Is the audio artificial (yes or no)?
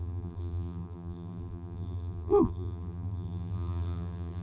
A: yes